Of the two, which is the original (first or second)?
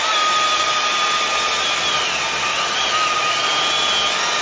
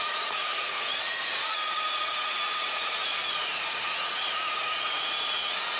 first